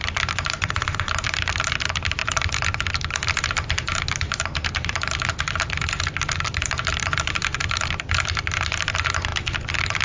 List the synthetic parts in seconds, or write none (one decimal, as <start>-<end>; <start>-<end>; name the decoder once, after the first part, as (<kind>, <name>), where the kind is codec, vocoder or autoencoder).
none